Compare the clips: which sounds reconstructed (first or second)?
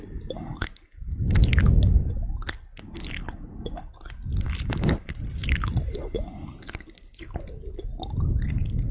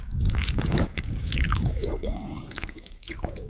second